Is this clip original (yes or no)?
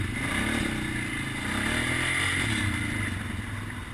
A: yes